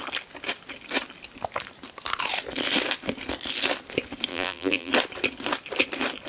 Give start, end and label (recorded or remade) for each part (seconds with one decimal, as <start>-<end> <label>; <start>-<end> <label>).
0.0-4.3 recorded; 4.3-4.9 remade; 4.9-6.3 recorded